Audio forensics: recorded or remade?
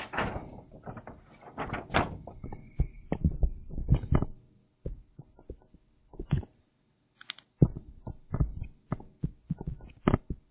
recorded